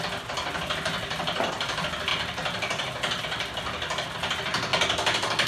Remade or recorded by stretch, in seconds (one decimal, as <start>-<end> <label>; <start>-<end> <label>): 0.0-5.5 recorded